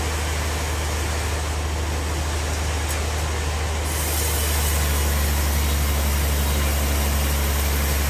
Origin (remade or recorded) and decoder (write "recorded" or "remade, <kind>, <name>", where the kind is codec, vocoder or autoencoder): recorded